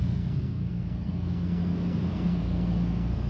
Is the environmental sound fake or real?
fake